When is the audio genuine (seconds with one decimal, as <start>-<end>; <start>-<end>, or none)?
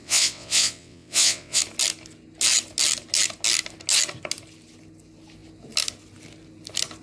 1.6-7.0